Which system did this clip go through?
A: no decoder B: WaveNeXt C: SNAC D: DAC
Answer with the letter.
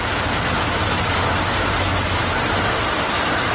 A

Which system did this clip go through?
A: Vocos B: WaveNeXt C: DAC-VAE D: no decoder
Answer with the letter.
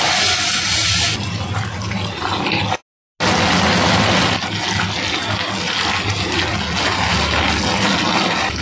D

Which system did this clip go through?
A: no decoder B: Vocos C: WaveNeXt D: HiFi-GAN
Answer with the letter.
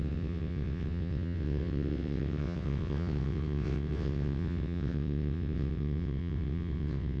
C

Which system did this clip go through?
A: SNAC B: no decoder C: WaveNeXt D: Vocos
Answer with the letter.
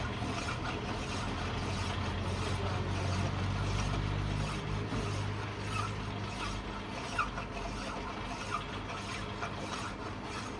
B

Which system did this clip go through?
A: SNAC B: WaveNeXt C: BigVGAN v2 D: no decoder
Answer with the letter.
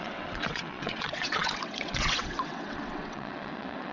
B